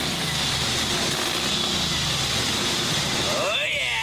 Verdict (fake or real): real